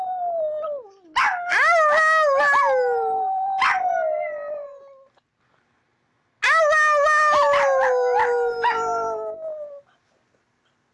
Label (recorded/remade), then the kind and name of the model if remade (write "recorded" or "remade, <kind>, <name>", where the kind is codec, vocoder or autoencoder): recorded